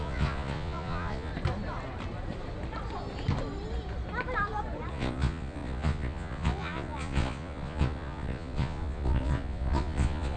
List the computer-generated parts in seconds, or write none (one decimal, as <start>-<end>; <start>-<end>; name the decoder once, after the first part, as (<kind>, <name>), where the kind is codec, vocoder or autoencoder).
0.0-1.3 (vocoder, Vocos); 4.9-10.4